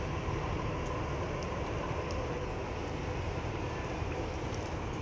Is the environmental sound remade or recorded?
recorded